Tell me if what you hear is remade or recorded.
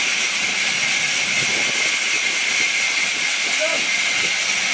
recorded